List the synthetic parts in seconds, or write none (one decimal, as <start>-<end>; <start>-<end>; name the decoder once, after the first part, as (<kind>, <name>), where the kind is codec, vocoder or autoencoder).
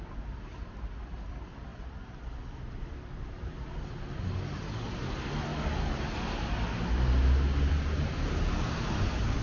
none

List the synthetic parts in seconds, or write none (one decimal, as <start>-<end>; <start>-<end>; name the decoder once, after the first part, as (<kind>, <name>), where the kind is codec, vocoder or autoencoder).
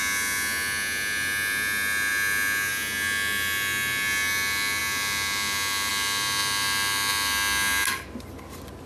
none